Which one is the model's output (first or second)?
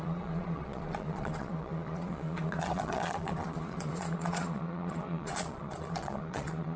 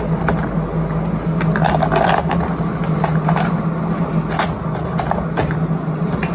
first